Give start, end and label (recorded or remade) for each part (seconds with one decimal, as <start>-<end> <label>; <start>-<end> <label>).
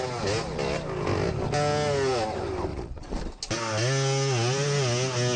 0.0-2.7 recorded; 2.7-3.2 remade; 3.2-5.4 recorded